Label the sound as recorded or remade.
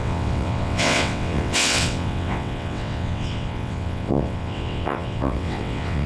remade